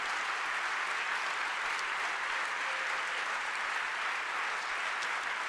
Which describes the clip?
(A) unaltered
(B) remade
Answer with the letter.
A